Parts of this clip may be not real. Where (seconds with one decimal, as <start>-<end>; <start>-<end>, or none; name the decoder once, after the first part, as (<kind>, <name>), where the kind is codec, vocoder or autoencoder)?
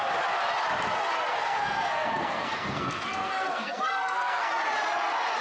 1.3-4.5 (codec, SNAC)